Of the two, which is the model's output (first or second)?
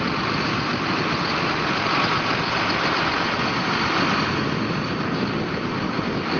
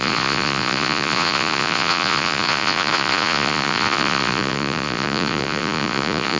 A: second